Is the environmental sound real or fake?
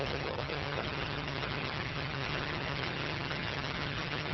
fake